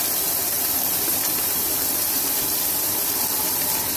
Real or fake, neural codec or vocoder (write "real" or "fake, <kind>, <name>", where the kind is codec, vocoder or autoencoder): fake, vocoder, BigVGAN v2